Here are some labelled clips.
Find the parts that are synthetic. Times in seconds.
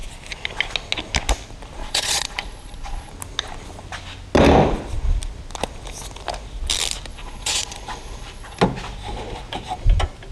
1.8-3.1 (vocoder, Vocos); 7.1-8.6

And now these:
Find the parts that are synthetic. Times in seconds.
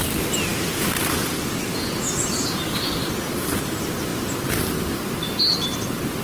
none